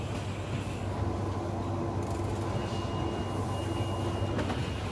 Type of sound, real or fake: real